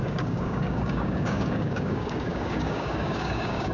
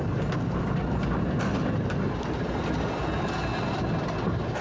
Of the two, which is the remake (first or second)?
first